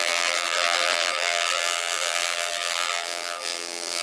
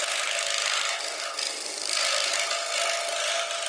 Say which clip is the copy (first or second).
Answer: first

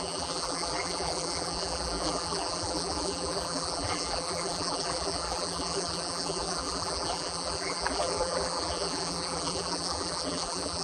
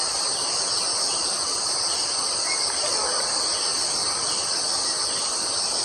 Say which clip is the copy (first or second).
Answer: first